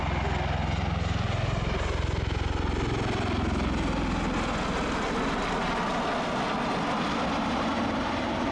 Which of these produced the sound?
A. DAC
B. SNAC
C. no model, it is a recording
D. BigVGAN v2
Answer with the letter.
C